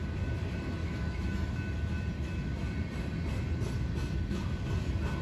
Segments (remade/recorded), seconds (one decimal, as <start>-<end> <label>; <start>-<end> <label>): 0.0-0.8 recorded; 0.8-1.5 remade; 1.5-5.2 recorded